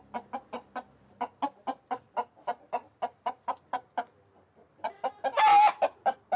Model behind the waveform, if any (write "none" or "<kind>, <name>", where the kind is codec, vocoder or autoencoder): none